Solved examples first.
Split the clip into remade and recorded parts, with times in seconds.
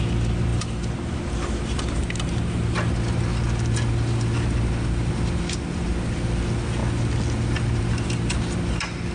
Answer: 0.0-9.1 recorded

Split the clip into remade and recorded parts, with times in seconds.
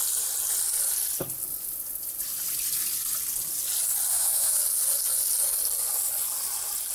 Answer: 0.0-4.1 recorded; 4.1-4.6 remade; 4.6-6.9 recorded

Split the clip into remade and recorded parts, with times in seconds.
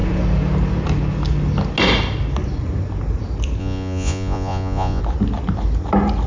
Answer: 0.0-3.6 recorded; 3.6-5.0 remade; 5.0-6.3 recorded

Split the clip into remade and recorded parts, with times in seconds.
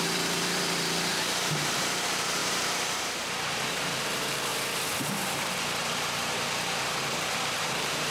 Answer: 0.0-4.5 remade; 4.5-5.1 recorded; 5.1-8.1 remade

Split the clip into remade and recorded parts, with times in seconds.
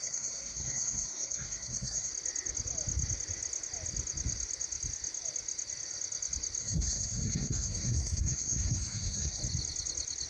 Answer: 0.0-2.1 remade; 2.1-6.6 recorded; 6.6-9.4 remade; 9.4-10.3 recorded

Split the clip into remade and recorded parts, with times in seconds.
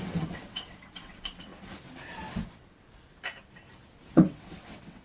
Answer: 0.0-1.5 remade; 1.5-4.1 recorded; 4.1-5.0 remade